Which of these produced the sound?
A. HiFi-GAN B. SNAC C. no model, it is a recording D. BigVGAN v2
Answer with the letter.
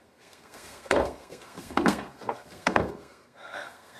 B